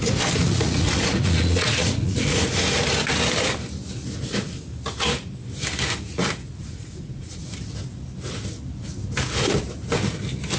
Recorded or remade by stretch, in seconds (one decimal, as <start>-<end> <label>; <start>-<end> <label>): 0.0-0.4 recorded; 0.4-2.6 remade; 2.6-6.6 recorded; 6.6-7.5 remade; 7.5-10.6 recorded